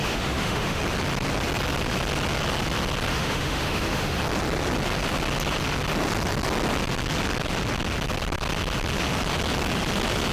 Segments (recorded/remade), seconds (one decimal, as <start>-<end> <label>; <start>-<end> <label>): 0.0-0.8 remade; 0.8-3.1 recorded; 3.1-4.2 remade; 4.2-10.3 recorded